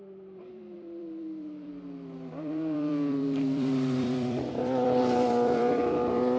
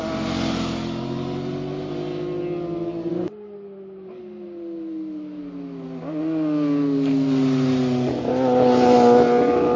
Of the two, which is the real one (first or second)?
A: second